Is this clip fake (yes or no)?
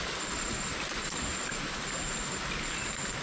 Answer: no